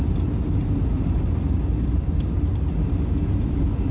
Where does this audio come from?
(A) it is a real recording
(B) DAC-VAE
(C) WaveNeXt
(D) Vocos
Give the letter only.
A